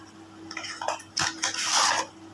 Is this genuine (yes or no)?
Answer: yes